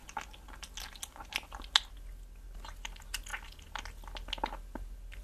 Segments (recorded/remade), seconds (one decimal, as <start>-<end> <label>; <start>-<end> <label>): 0.0-5.2 recorded